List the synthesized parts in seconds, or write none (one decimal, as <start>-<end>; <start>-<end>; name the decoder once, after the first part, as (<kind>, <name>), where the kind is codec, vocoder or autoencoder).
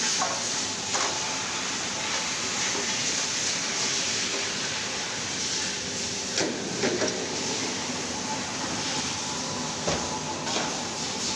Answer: 3.6-8.5 (vocoder, BigVGAN v2)